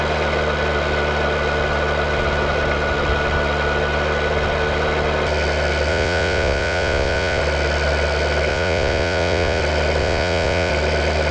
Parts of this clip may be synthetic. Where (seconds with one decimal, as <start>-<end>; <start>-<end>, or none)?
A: 5.9-7.4; 8.5-9.6; 10.0-10.7